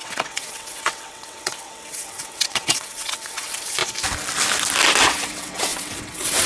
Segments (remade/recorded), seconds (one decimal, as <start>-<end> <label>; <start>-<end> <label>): 0.0-3.8 remade; 3.8-5.0 recorded; 5.0-6.5 remade